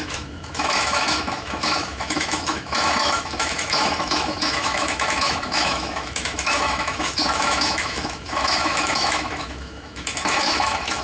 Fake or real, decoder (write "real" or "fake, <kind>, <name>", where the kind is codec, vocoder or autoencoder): fake, autoencoder, DAC-VAE